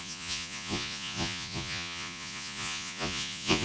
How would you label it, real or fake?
fake